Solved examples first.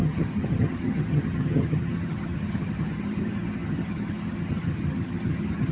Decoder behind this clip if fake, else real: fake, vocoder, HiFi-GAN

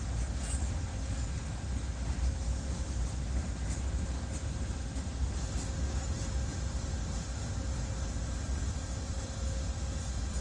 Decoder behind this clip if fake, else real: real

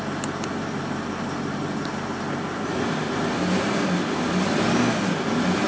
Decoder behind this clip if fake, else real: real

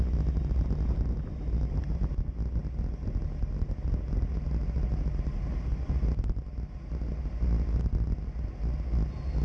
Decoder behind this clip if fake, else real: real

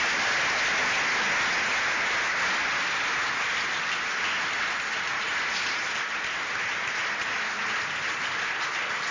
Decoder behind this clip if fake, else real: real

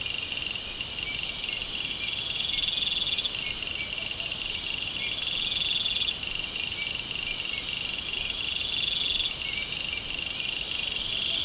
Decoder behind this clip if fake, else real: real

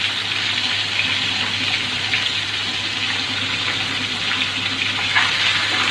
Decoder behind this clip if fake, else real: real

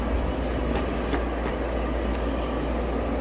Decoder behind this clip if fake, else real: real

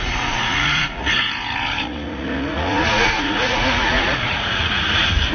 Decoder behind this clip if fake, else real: fake, vocoder, Vocos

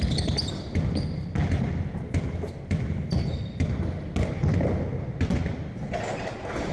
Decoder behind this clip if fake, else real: real